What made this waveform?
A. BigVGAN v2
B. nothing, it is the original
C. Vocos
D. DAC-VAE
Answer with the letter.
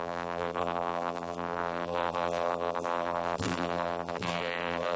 A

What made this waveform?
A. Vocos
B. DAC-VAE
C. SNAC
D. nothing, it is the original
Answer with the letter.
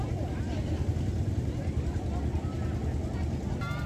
D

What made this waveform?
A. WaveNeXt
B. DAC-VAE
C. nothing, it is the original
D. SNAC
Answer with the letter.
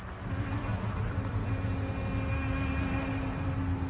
C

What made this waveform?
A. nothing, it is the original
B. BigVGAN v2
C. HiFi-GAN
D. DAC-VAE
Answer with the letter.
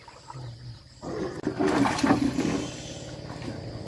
A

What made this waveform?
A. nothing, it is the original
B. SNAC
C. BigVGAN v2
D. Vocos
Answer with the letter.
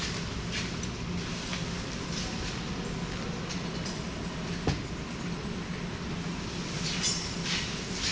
A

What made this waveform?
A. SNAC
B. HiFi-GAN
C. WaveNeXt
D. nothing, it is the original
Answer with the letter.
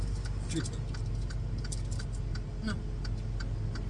D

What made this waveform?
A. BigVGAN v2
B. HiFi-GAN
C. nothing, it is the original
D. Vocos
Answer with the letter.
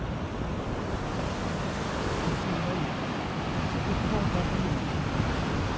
C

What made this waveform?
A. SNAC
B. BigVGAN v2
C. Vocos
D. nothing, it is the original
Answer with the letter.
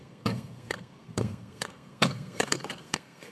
A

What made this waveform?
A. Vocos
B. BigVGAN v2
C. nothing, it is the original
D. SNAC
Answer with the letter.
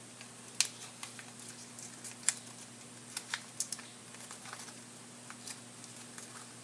C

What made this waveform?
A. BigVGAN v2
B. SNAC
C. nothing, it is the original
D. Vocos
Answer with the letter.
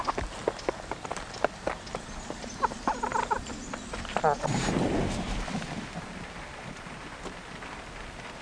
C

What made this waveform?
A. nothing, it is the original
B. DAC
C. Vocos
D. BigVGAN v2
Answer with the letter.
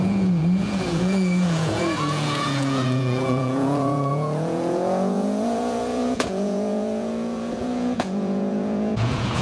C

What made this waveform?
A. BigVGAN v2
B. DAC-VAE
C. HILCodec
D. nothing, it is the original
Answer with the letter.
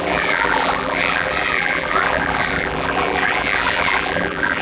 A